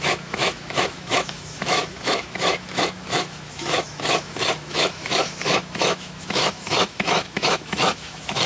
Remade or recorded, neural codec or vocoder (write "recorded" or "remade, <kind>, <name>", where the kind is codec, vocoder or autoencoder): remade, autoencoder, DAC-VAE